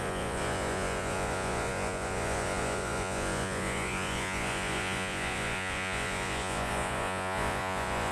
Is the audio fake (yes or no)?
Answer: yes